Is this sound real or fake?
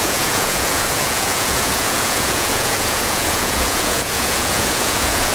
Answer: fake